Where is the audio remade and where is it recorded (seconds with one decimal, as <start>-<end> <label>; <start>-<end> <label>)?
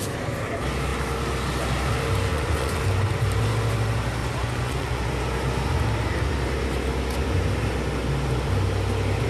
0.0-2.3 recorded; 2.3-2.8 remade; 2.8-4.2 recorded; 4.2-5.0 remade; 5.0-9.3 recorded